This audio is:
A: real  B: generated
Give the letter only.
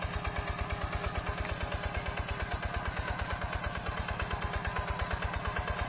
A